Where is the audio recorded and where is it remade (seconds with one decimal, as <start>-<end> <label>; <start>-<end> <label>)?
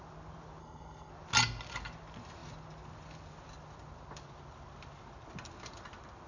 0.0-0.6 recorded; 0.6-1.1 remade; 1.1-6.3 recorded